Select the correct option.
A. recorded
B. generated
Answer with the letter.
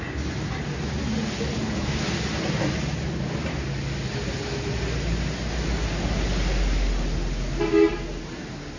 A